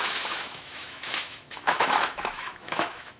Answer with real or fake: fake